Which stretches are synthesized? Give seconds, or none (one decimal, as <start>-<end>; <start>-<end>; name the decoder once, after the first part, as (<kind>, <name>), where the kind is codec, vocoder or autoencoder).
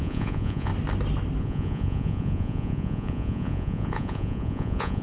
0.0-0.7 (vocoder, Vocos); 1.4-5.0